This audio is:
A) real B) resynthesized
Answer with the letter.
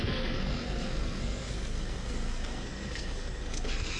B